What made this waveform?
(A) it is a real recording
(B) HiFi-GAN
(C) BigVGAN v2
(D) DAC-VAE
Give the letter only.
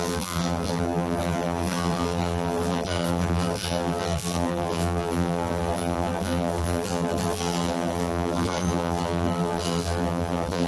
C